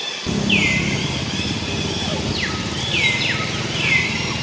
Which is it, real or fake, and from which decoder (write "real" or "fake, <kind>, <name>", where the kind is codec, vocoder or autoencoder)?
real